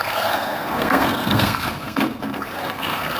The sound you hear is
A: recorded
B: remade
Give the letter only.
B